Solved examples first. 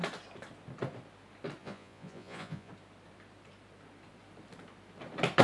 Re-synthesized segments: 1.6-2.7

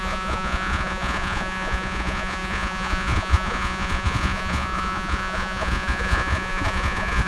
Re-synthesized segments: 0.0-7.3

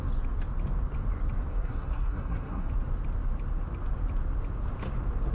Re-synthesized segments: 1.5-2.7

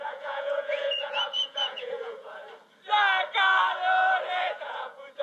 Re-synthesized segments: 0.0-2.4; 4.4-5.2

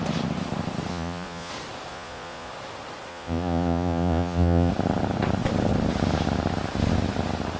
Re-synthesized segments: 0.9-1.5; 1.9-2.5; 3.1-4.7